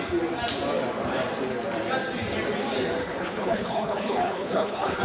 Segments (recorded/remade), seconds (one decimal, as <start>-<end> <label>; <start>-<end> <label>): 0.0-3.0 recorded; 3.0-5.0 remade